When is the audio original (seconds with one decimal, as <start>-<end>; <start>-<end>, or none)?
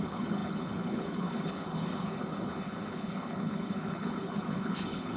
none